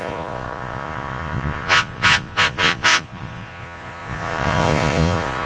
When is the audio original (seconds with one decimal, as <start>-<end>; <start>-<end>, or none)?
none